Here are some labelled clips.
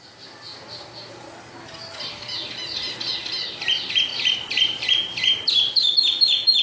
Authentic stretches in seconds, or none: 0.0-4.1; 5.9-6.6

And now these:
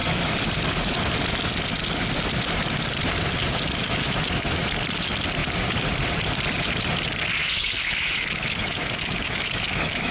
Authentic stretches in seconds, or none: 0.0-3.8; 4.6-7.4